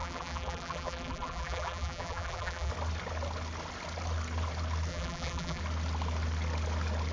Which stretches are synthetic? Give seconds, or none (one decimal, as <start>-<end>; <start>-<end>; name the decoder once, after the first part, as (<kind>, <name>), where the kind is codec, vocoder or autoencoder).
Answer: 0.0-2.7 (vocoder, BigVGAN v2); 4.9-5.6